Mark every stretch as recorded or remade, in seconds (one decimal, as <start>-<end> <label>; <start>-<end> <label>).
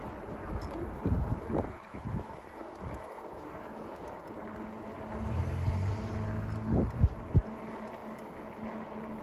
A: 0.0-1.9 recorded; 1.9-4.2 remade; 4.2-9.2 recorded